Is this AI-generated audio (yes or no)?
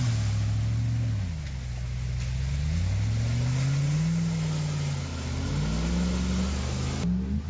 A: no